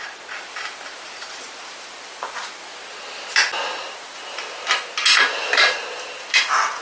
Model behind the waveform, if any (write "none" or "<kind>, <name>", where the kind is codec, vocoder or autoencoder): none